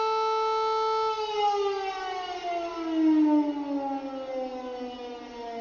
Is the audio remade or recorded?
recorded